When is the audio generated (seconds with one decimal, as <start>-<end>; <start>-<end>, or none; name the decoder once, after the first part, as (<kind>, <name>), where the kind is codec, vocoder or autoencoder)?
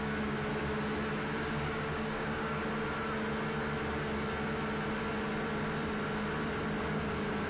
0.0-0.5 (codec, DAC); 1.2-2.6; 6.8-7.5